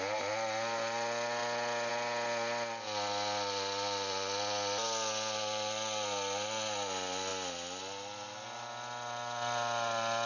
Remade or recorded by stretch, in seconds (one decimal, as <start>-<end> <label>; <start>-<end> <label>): 0.0-10.3 recorded